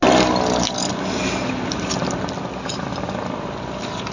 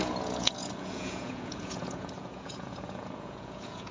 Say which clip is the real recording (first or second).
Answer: first